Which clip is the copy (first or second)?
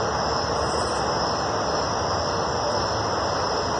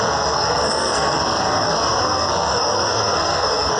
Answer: second